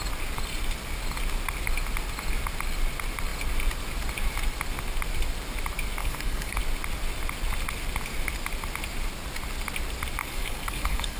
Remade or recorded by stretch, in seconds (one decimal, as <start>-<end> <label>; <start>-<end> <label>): 0.0-6.0 recorded; 6.0-6.6 remade; 6.6-10.2 recorded; 10.2-11.2 remade